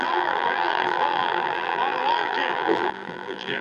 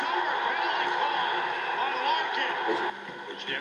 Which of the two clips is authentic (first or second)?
second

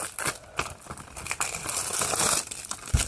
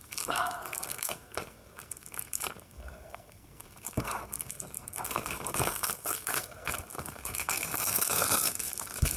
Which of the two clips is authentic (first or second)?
first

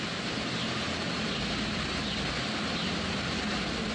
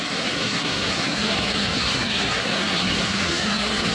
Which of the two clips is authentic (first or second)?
first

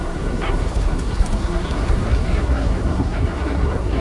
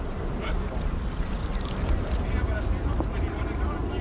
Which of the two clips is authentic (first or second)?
second